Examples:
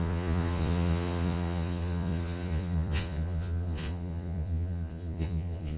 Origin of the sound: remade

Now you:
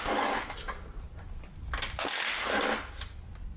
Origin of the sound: recorded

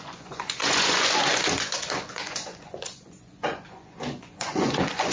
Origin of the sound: remade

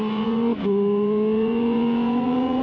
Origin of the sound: remade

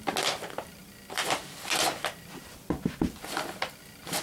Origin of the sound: recorded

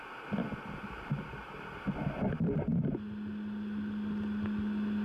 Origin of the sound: recorded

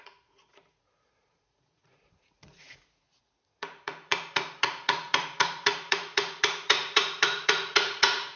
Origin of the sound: remade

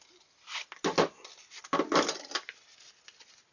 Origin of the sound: recorded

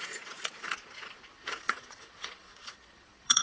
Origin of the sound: remade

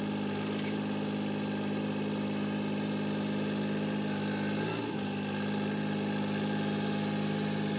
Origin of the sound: recorded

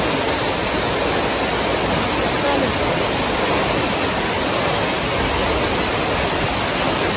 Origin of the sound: recorded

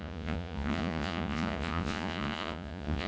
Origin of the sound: remade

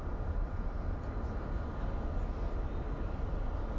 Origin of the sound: recorded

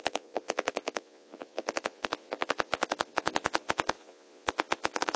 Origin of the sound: remade